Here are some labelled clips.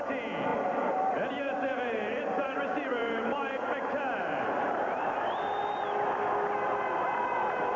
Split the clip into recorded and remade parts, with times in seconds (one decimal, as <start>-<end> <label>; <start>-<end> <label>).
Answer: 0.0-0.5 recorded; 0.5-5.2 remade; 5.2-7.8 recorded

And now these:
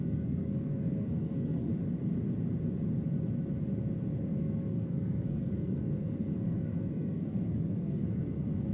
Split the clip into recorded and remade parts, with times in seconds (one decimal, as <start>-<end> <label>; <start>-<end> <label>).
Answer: 0.0-1.7 remade; 1.7-4.2 recorded; 4.2-8.7 remade

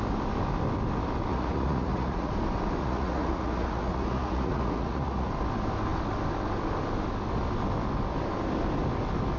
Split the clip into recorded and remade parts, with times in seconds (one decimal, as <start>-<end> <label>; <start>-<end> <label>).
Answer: 0.0-1.3 recorded; 1.3-2.3 remade; 2.3-2.8 recorded; 2.8-5.3 remade; 5.3-9.4 recorded